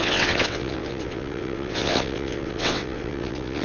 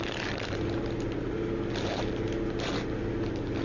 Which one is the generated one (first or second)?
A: first